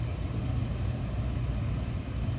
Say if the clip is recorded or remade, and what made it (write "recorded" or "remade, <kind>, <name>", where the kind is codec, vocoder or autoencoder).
recorded